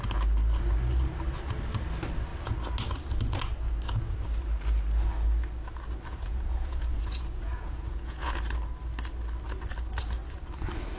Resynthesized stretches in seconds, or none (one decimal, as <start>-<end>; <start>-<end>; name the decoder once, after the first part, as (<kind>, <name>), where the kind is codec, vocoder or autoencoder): 6.1-8.4 (vocoder, Vocos)